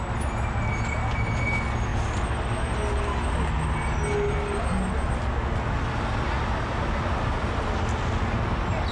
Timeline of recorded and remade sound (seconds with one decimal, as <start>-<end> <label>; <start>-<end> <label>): 0.0-8.9 recorded